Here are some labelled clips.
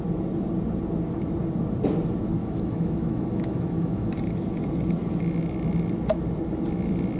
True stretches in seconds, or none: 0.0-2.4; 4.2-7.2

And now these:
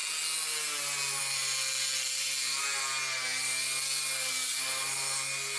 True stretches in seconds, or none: 0.0-5.6

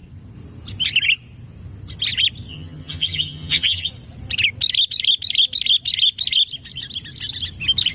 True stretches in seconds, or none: 0.0-2.5; 3.9-7.9

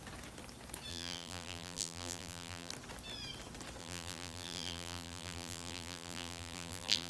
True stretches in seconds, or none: 0.0-0.9; 2.7-3.8

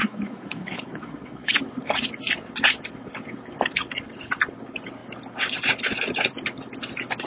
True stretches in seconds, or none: 1.6-7.3